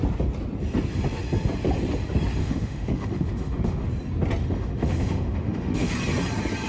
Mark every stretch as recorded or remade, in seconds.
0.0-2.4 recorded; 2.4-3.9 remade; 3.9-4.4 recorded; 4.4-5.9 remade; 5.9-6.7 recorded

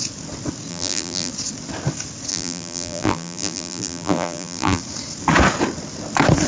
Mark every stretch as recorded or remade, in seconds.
0.0-0.7 recorded; 0.7-1.3 remade; 1.3-2.3 recorded; 2.3-4.8 remade; 4.8-6.5 recorded

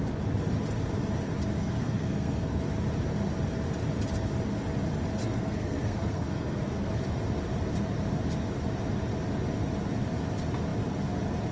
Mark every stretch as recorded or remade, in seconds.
0.0-1.6 recorded; 1.6-2.6 remade; 2.6-5.2 recorded; 5.2-6.9 remade; 6.9-11.5 recorded

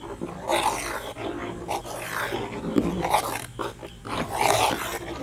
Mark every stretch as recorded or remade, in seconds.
0.0-5.2 recorded

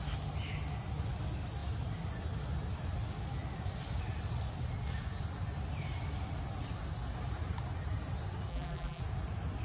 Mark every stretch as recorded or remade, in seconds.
0.0-8.5 recorded; 8.5-9.0 remade; 9.0-9.6 recorded